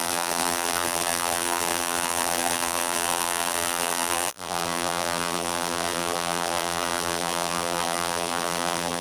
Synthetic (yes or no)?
yes